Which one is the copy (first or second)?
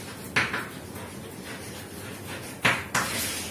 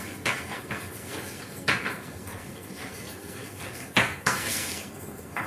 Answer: second